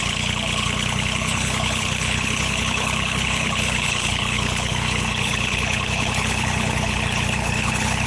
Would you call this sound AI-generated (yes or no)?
yes